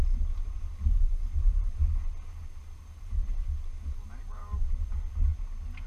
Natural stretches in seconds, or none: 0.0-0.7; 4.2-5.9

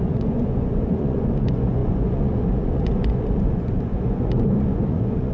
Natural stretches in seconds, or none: none

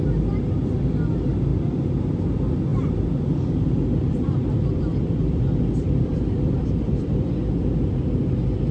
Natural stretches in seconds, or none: 0.0-1.5; 2.0-2.7; 7.3-8.7

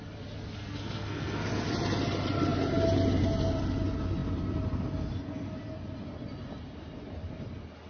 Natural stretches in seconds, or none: 0.0-0.6; 1.4-7.9

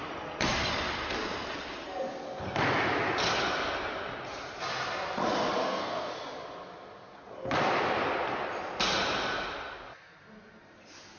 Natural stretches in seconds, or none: 0.0-5.6; 6.1-11.2

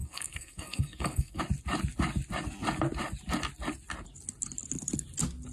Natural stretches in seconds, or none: 1.4-5.5

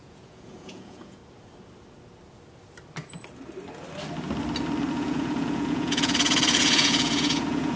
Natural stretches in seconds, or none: 1.2-4.9